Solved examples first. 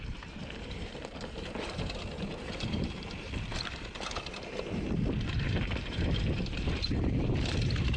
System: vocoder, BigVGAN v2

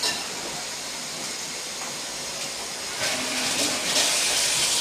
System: none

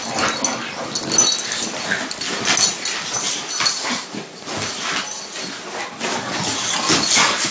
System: none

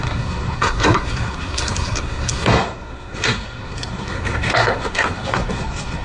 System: codec, SNAC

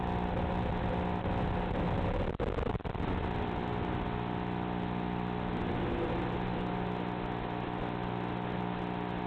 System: none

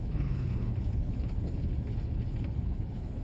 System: codec, HILCodec